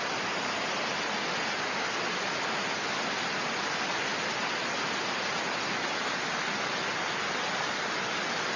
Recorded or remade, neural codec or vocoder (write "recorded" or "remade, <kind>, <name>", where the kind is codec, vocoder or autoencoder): recorded